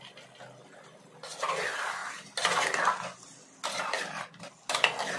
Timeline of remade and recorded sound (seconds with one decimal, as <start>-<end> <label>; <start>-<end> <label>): 0.0-5.2 recorded